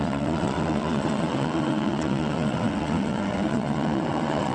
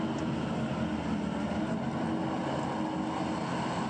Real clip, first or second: second